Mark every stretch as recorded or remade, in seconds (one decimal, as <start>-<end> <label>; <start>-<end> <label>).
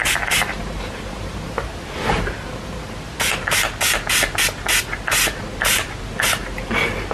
0.0-1.7 remade; 1.7-7.1 recorded